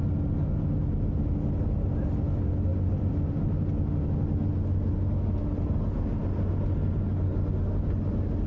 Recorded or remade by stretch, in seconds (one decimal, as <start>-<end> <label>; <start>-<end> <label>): 0.0-2.7 recorded; 2.7-3.6 remade; 3.6-8.5 recorded